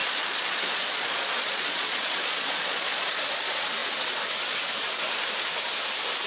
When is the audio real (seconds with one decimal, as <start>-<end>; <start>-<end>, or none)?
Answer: 3.1-6.3